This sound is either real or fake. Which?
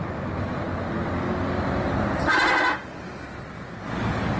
real